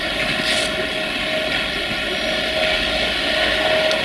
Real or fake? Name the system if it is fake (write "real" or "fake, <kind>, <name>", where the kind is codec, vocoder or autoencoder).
real